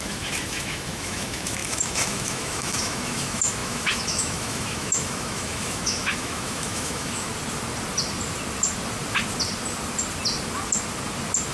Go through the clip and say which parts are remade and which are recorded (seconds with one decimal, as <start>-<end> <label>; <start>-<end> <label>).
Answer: 0.0-7.3 remade; 7.3-11.5 recorded